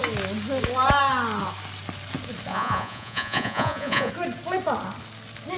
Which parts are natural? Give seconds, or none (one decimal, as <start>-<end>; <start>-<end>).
0.0-2.5; 4.1-5.6